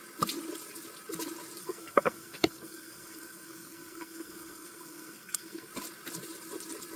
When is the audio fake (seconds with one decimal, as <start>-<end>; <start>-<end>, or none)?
1.6-5.7